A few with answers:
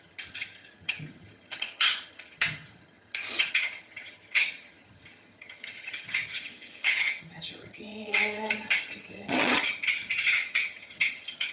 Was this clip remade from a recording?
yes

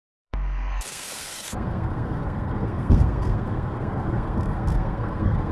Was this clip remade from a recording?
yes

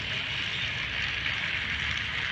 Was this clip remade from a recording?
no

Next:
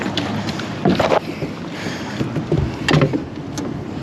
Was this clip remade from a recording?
no